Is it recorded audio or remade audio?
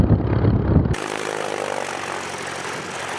recorded